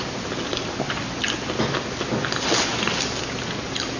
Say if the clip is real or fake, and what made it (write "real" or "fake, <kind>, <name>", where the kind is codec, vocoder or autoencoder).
real